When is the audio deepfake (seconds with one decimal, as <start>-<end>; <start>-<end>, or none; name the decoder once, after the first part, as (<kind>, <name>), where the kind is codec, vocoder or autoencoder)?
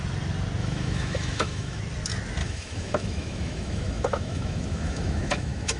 0.6-1.8 (autoencoder, DAC-VAE); 2.4-5.8